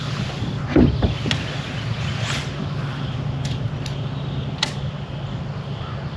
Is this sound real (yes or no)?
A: yes